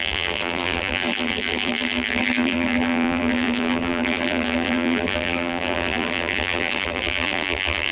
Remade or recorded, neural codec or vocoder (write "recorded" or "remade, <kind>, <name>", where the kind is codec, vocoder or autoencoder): remade, vocoder, BigVGAN v2